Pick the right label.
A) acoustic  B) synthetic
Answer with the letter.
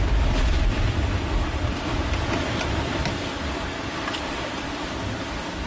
A